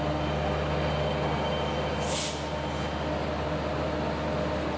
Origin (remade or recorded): recorded